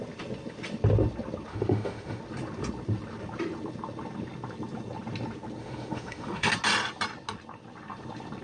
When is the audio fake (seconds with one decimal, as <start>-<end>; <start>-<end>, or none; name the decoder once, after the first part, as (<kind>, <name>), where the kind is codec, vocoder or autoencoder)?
1.5-2.2 (autoencoder, DAC-VAE); 5.6-6.5